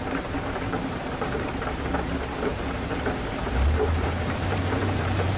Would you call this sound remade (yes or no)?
yes